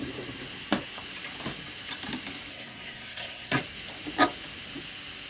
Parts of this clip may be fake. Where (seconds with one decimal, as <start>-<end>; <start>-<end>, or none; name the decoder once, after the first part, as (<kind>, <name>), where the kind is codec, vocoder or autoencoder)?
2.5-3.6 (codec, SNAC)